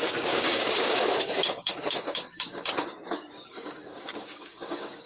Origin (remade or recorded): remade